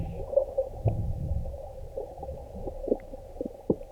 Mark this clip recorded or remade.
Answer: recorded